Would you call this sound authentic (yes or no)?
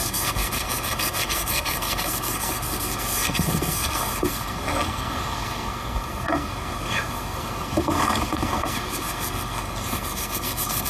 no